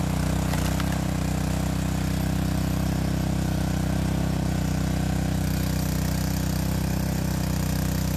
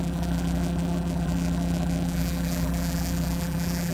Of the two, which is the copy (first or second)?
second